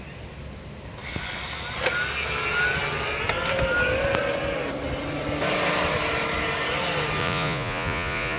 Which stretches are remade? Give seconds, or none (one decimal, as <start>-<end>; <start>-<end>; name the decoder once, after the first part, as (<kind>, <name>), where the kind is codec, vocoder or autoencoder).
7.2-8.4 (vocoder, Vocos)